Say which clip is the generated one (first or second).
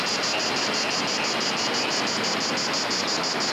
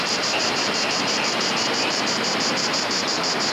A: second